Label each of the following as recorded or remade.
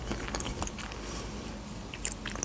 recorded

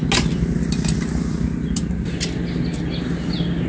recorded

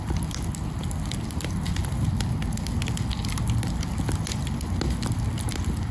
recorded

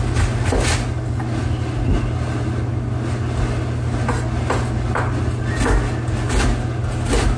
recorded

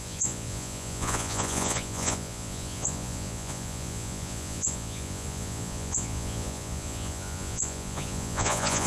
remade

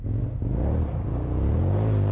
recorded